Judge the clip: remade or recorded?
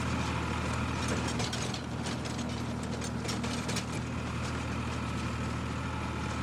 recorded